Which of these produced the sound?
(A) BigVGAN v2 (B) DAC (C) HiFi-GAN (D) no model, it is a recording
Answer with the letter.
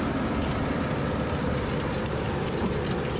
D